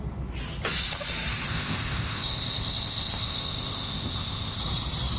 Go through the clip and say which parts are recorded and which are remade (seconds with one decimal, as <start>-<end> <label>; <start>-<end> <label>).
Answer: 0.0-1.5 recorded; 1.5-4.6 remade; 4.6-5.2 recorded